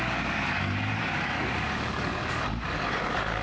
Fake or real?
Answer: fake